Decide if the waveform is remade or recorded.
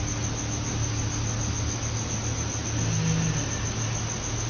recorded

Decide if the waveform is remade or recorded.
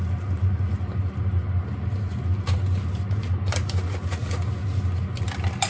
recorded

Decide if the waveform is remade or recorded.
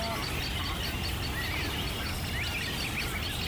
recorded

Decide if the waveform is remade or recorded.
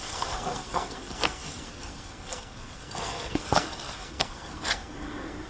remade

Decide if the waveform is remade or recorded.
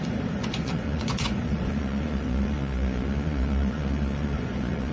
remade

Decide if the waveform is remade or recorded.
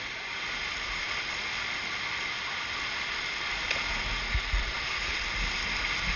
recorded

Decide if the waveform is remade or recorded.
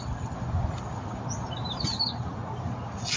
recorded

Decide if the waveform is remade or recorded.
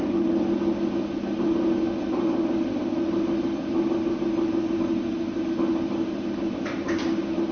recorded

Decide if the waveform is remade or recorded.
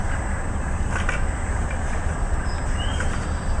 recorded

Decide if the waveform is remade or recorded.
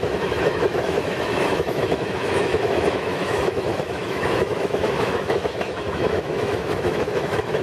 remade